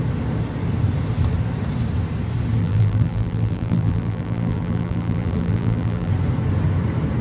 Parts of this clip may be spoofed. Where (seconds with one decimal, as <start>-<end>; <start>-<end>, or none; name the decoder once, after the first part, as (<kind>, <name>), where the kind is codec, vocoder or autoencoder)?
2.6-6.1 (vocoder, BigVGAN v2)